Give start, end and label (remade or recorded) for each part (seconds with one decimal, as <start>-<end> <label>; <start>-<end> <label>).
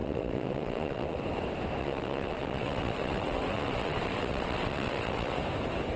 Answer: 0.0-1.2 remade; 1.2-1.8 recorded; 1.8-5.4 remade; 5.4-6.0 recorded